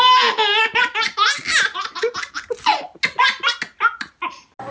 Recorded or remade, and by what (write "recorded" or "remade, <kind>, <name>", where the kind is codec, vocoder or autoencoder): recorded